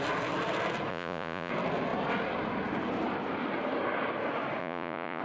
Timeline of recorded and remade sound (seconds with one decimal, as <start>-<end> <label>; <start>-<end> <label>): 0.0-0.9 recorded; 0.9-1.5 remade; 1.5-4.6 recorded; 4.6-5.2 remade